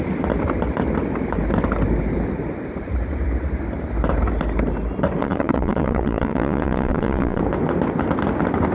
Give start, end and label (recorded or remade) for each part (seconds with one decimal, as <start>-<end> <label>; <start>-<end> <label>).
0.0-5.2 recorded; 5.2-7.4 remade; 7.4-8.7 recorded